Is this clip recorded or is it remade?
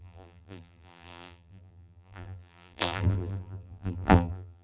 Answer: remade